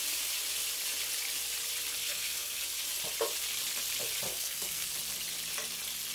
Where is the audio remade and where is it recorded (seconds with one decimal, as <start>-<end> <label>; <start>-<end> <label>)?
0.0-2.0 recorded; 2.0-2.6 remade; 2.6-4.3 recorded; 4.3-4.9 remade; 4.9-6.1 recorded